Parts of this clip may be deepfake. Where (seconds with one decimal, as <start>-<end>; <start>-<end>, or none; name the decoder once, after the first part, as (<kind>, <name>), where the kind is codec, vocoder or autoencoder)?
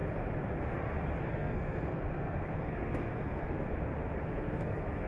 1.3-3.7 (codec, SNAC); 4.2-5.1